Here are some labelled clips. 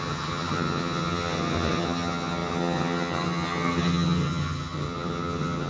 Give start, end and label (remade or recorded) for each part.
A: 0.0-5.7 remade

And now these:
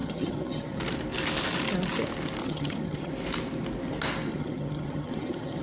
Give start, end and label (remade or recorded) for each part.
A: 0.0-0.8 remade; 0.8-2.4 recorded; 2.4-3.1 remade; 3.1-4.3 recorded; 4.3-5.6 remade

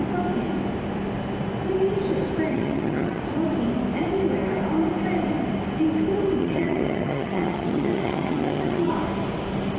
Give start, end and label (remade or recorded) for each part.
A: 0.0-2.5 recorded; 2.5-3.2 remade; 3.2-6.4 recorded; 6.4-8.9 remade; 8.9-9.8 recorded

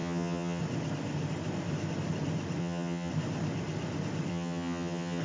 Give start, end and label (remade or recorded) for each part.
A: 0.0-0.6 remade; 0.6-2.6 recorded; 2.6-3.1 remade; 3.1-4.3 recorded; 4.3-5.2 remade

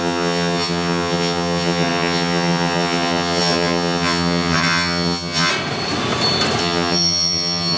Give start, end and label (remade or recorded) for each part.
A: 0.0-5.5 remade; 5.5-6.6 recorded; 6.6-7.8 remade

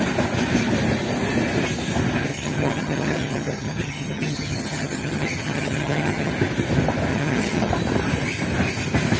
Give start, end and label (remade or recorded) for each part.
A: 0.0-2.3 recorded; 2.3-6.3 remade; 6.3-7.1 recorded; 7.1-7.7 remade; 7.7-9.2 recorded